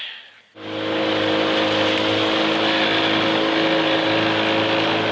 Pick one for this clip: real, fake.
real